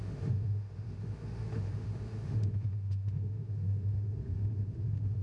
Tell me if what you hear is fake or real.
fake